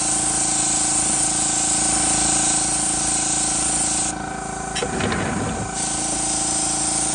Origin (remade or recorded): recorded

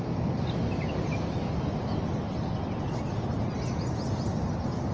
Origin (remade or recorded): recorded